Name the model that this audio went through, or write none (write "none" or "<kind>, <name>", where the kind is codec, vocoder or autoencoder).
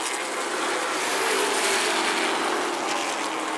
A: none